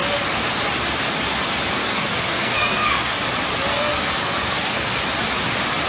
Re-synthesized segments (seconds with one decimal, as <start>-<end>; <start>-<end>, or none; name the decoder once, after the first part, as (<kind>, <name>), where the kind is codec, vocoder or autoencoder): 1.8-3.2 (codec, SNAC); 3.7-5.0